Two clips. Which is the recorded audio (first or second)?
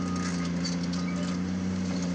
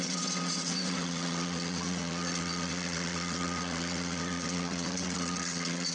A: first